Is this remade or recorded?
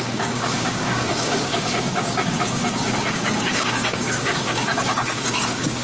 remade